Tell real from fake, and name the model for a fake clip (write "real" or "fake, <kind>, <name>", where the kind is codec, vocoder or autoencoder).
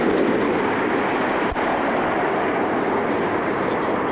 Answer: real